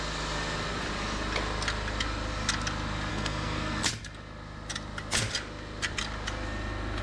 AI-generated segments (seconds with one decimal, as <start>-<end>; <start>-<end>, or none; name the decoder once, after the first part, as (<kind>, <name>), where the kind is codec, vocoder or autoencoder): 3.1-3.8 (codec, SNAC)